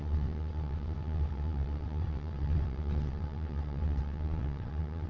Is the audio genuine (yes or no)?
no